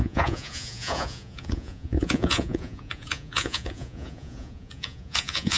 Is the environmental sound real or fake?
fake